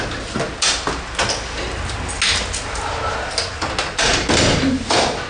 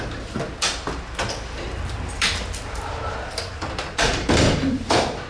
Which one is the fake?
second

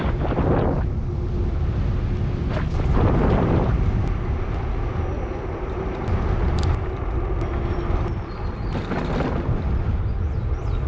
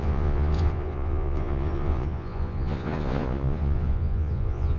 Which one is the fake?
second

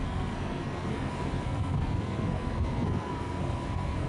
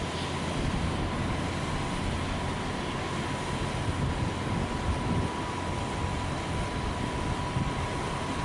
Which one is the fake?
first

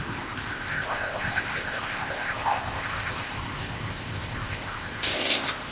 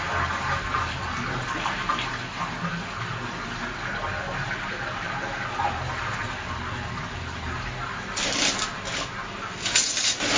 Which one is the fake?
first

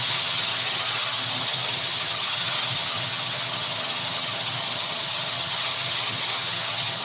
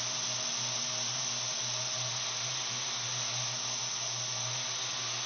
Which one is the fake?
first